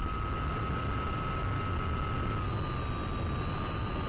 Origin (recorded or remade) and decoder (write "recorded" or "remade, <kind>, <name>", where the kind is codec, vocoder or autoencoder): recorded